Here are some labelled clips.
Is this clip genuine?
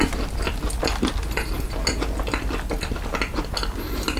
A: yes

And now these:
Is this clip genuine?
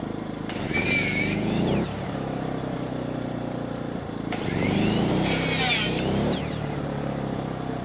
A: no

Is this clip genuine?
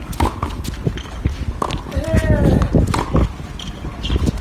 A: yes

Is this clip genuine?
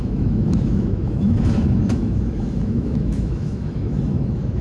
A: no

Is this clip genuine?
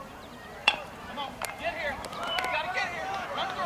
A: no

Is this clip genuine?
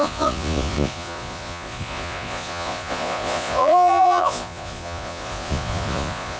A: no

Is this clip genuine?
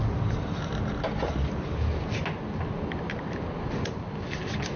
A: yes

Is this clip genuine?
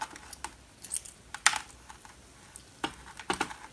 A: yes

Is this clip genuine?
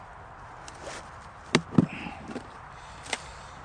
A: yes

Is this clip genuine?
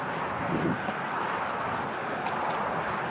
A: yes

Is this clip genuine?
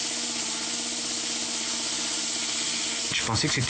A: yes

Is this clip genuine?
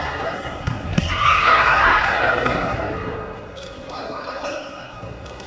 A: no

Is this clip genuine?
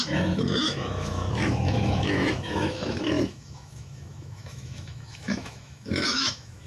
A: no